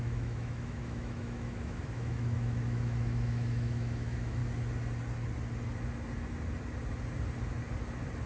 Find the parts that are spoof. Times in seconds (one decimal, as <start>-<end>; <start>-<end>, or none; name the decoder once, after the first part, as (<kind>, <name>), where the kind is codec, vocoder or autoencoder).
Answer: 0.0-4.4 (autoencoder, DAC-VAE)